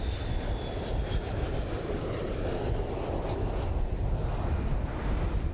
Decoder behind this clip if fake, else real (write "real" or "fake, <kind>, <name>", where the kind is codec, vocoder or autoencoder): real